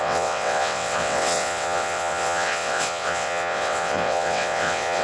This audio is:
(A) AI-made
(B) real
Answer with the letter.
A